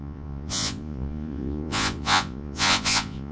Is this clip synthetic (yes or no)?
yes